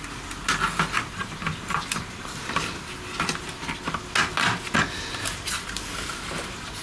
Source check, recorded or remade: recorded